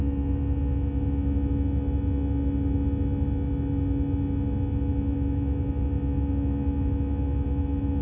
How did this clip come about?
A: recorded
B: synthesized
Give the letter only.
A